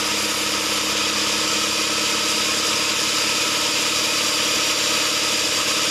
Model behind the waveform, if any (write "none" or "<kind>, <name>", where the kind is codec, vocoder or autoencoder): none